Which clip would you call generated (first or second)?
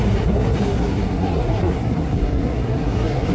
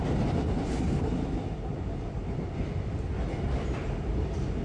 first